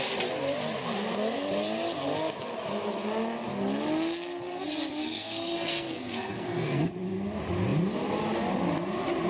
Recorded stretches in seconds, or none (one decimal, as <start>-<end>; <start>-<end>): 0.0-5.0; 6.9-9.3